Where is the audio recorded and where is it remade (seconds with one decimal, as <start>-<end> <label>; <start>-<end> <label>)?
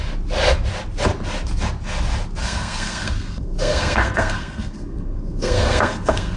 0.0-2.4 recorded; 2.4-6.4 remade